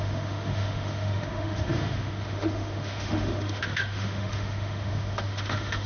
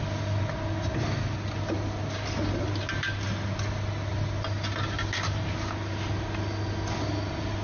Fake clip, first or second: first